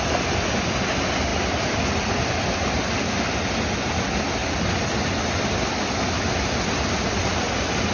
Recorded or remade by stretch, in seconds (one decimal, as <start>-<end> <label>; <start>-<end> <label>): 0.0-1.3 recorded; 1.3-3.3 remade; 3.3-7.9 recorded